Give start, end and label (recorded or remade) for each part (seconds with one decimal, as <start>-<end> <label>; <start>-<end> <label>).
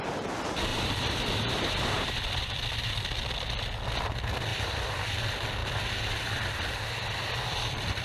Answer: 0.0-0.7 recorded; 0.7-2.2 remade; 2.2-4.5 recorded; 4.5-5.1 remade; 5.1-5.6 recorded; 5.6-6.5 remade; 6.5-8.0 recorded